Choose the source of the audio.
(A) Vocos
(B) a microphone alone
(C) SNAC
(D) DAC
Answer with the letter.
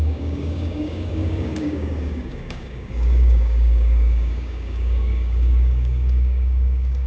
D